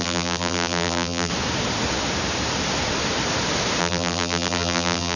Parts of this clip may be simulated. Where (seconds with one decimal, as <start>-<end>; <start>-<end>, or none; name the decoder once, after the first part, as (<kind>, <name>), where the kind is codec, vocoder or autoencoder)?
0.0-1.3 (vocoder, BigVGAN v2); 3.8-5.2